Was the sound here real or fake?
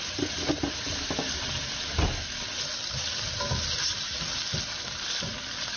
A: real